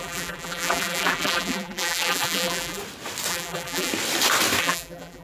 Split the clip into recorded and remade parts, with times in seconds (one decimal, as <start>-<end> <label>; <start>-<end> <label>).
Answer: 0.0-2.8 remade; 2.8-3.3 recorded; 3.3-3.9 remade; 3.9-4.6 recorded; 4.6-5.2 remade